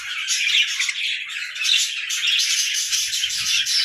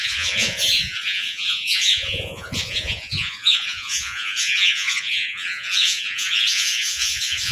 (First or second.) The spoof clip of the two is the second